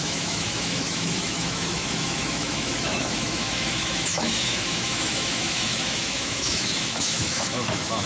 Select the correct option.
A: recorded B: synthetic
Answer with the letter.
B